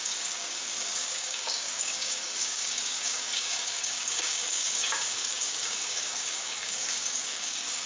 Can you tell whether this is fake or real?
fake